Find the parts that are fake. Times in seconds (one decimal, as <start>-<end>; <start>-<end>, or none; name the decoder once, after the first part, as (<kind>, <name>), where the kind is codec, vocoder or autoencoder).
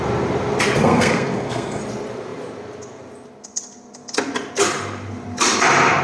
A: 0.8-1.8 (codec, SNAC)